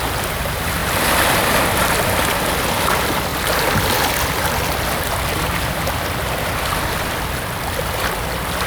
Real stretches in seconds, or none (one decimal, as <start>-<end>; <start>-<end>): 0.0-8.7